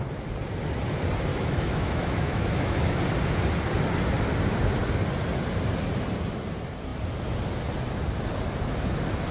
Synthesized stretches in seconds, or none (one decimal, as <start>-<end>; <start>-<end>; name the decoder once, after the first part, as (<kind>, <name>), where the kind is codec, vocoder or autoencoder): 1.3-3.0 (autoencoder, DAC-VAE)